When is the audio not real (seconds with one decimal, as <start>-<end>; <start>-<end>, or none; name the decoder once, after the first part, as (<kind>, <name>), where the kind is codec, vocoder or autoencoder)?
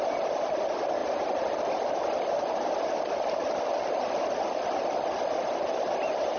none